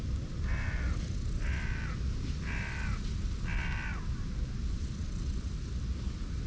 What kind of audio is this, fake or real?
real